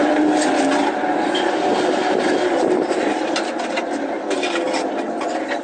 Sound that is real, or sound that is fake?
real